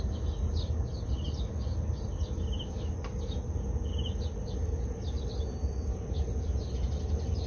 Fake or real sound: real